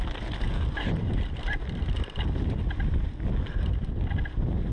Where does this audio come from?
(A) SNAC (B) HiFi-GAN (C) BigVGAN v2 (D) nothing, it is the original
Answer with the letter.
D